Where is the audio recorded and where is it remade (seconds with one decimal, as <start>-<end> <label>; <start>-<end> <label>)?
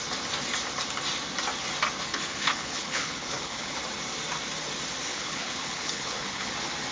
0.0-2.1 recorded; 2.1-3.8 remade; 3.8-5.1 recorded; 5.1-6.5 remade; 6.5-6.9 recorded